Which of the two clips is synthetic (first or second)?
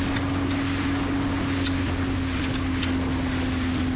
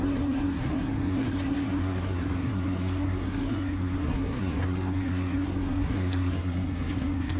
second